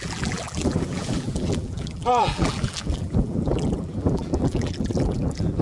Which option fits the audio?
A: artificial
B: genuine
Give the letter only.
A